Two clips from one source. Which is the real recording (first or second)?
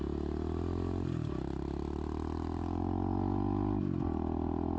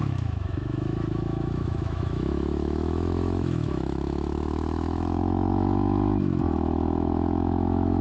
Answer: first